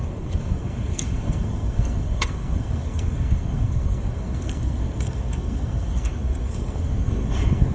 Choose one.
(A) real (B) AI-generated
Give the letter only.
B